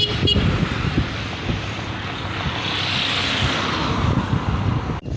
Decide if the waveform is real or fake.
real